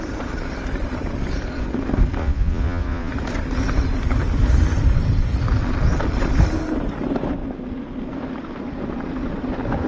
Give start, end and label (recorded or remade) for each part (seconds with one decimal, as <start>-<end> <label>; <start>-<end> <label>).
0.0-2.2 recorded; 2.2-3.1 remade; 3.1-9.9 recorded